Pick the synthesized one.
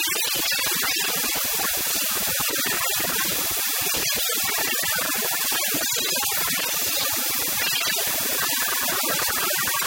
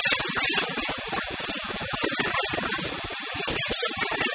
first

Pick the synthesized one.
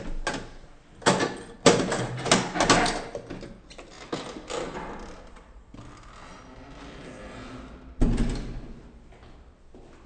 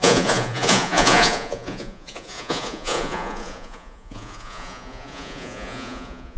second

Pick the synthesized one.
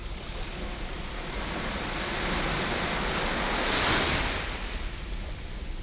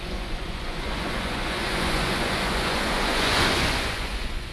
second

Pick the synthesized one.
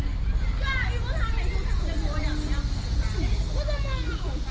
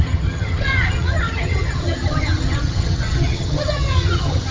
second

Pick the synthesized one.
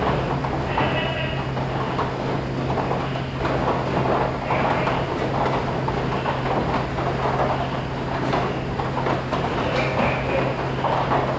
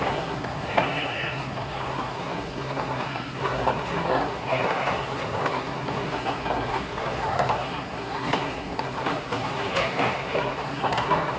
second